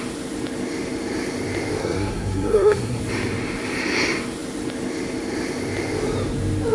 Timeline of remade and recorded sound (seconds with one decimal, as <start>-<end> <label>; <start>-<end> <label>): 0.0-1.8 recorded; 1.8-3.0 remade; 3.0-6.7 recorded